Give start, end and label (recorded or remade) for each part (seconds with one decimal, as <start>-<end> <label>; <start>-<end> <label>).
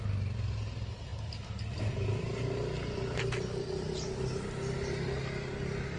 0.0-6.0 recorded